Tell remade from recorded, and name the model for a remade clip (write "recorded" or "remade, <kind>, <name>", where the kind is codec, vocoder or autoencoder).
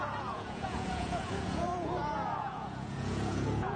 remade, vocoder, Vocos